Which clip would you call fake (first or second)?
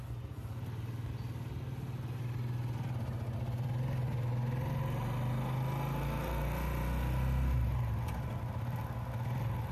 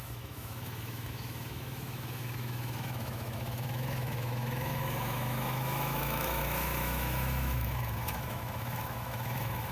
second